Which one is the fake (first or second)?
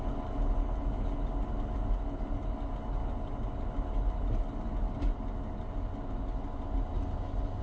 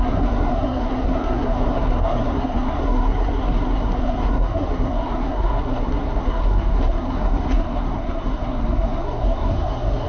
second